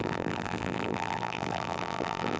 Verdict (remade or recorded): remade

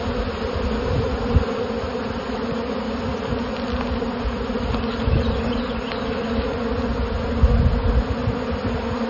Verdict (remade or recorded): recorded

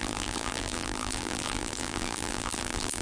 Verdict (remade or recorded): remade